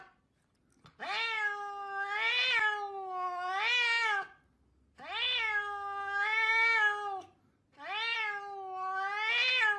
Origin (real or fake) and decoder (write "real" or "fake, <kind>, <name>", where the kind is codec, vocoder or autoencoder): real